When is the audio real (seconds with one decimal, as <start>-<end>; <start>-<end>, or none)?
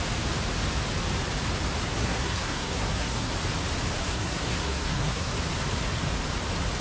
0.0-1.8; 3.3-4.0; 5.3-6.8